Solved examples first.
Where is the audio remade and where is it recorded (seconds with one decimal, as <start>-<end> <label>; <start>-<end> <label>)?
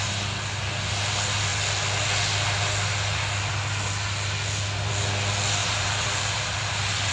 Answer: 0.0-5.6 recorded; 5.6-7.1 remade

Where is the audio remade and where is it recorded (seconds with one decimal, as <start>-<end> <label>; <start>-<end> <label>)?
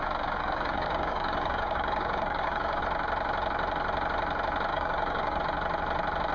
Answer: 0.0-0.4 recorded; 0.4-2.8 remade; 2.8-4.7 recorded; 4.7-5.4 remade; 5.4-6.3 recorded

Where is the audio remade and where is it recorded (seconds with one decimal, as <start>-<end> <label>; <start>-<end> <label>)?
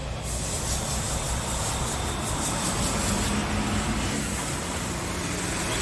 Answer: 0.0-5.8 recorded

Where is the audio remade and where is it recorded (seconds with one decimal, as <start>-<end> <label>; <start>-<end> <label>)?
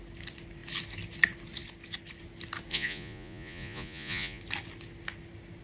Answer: 0.0-2.7 recorded; 2.7-4.4 remade; 4.4-5.6 recorded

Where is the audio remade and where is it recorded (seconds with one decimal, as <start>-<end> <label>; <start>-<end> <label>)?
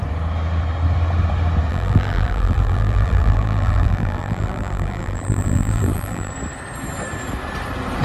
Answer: 0.0-1.7 recorded; 1.7-6.3 remade; 6.3-8.0 recorded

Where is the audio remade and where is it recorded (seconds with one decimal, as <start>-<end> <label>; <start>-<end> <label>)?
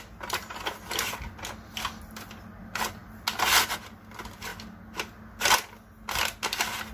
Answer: 0.0-6.9 recorded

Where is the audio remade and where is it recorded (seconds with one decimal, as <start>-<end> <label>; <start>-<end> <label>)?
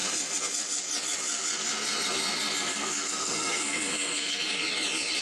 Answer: 0.0-2.7 recorded; 2.7-4.5 remade; 4.5-5.2 recorded